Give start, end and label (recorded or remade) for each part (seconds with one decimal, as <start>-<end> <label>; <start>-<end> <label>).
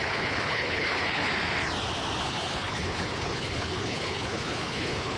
0.0-1.3 remade; 1.3-2.2 recorded; 2.2-5.2 remade